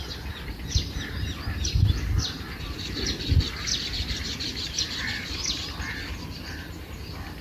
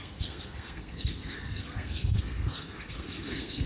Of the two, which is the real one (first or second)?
first